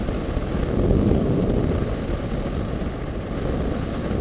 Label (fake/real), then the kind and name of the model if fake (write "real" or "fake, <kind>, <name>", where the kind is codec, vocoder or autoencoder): real